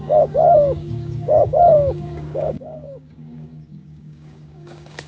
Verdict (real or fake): fake